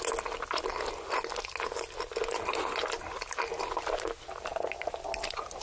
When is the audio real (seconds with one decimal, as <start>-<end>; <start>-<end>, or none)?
0.0-5.6